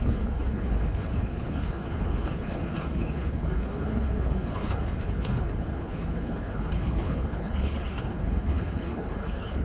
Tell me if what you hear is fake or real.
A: fake